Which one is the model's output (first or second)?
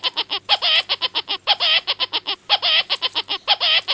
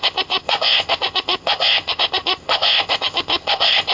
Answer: second